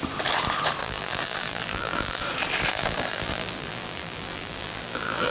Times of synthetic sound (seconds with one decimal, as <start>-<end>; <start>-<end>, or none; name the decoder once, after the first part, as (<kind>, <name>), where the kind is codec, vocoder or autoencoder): 0.8-2.2 (vocoder, BigVGAN v2); 2.7-5.3